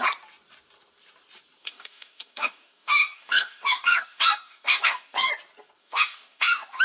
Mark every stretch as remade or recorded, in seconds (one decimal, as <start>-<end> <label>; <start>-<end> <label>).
0.0-1.6 recorded; 1.6-5.3 remade; 5.3-5.8 recorded; 5.8-6.8 remade